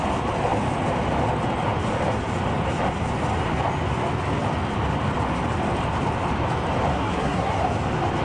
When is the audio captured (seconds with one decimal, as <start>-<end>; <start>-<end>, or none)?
0.0-6.9; 7.6-8.2